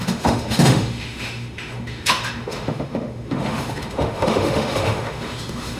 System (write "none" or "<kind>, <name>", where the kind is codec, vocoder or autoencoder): autoencoder, DAC-VAE